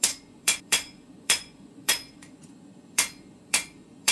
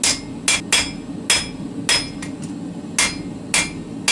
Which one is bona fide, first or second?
second